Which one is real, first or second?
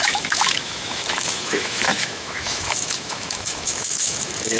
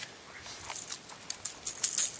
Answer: second